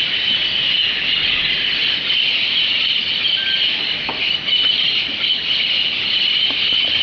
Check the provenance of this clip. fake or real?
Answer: real